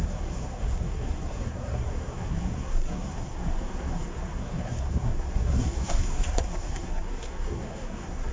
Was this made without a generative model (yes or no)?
no